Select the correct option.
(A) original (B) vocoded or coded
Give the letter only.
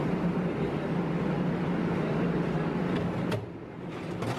A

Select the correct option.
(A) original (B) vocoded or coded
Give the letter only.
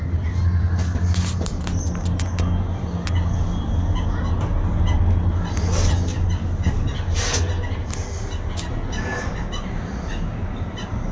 A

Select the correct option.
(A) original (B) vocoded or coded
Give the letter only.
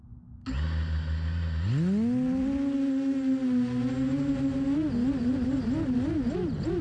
A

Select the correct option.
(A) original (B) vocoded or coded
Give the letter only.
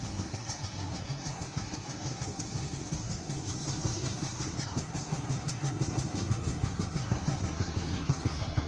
B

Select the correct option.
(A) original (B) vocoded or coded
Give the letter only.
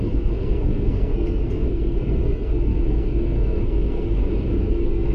B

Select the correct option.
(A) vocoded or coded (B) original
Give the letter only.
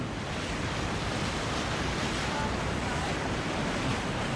B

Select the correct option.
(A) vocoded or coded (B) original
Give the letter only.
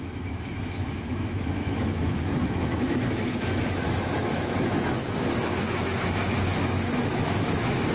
A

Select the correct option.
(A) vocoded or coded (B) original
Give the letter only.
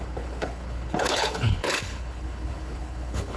A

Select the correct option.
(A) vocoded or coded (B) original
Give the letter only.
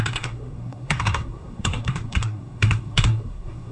A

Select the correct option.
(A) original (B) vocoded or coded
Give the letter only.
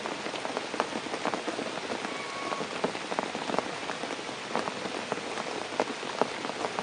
A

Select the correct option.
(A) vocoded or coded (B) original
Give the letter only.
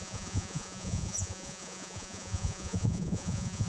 A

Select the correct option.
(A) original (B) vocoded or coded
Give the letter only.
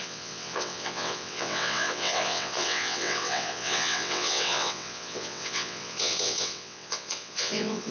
B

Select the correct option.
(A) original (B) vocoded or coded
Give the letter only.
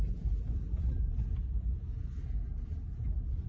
A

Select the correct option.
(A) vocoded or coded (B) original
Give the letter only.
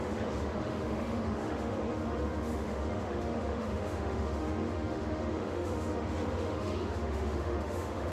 A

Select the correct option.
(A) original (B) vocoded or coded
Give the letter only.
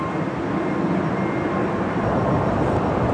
A